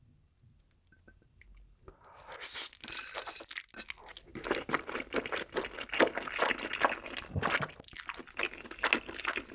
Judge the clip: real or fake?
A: real